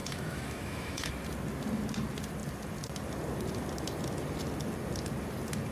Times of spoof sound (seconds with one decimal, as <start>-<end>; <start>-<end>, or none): 0.0-1.1